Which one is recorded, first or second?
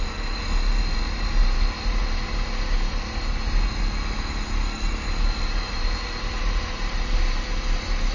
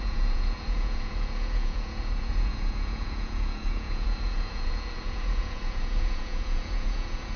first